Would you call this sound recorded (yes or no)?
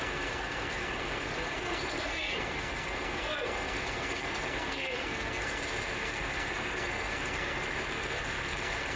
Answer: no